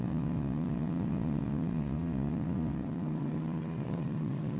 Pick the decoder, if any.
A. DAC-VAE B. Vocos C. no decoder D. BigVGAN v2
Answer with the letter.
B